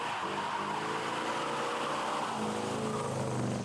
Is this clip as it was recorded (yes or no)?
yes